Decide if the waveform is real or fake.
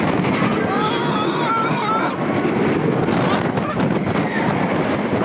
real